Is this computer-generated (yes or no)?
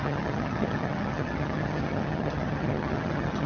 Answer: yes